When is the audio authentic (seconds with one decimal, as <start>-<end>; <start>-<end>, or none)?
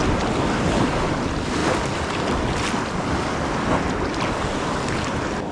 0.0-5.5